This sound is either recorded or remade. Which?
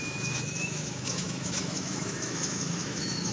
remade